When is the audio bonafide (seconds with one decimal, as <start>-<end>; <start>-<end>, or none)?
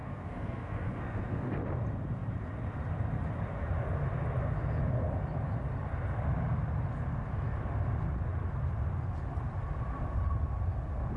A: 1.5-11.2